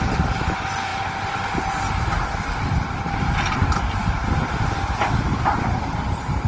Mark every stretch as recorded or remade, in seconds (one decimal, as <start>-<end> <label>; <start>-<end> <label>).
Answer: 0.0-6.5 recorded